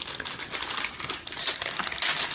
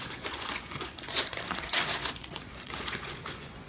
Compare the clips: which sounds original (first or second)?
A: first